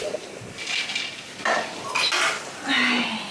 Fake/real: real